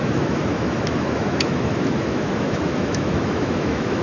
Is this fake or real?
fake